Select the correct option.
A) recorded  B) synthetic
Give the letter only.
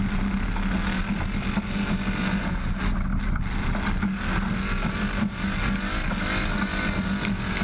A